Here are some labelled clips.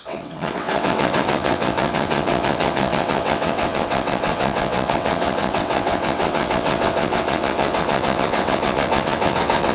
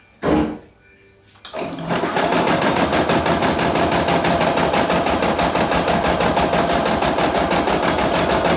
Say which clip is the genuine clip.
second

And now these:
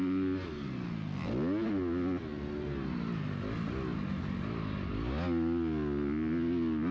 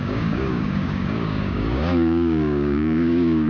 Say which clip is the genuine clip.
first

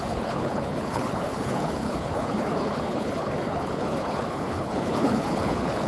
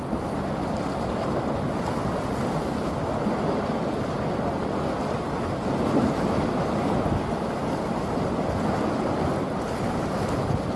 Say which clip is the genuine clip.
second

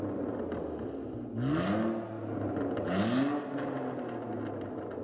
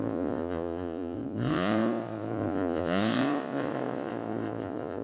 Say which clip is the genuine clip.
first